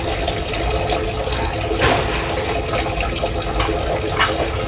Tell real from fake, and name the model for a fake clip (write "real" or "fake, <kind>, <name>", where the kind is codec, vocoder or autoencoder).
real